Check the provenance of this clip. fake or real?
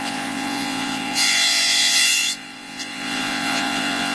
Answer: fake